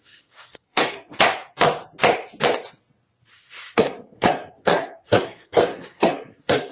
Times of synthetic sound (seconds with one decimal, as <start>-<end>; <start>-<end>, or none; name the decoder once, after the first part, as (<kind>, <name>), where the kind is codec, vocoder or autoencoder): 0.0-1.1 (codec, SNAC); 3.3-6.7